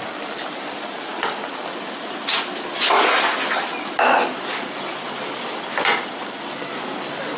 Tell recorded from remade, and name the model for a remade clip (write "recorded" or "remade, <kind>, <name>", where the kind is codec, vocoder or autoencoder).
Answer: recorded